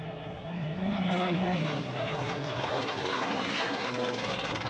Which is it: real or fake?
fake